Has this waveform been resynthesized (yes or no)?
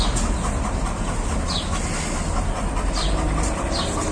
no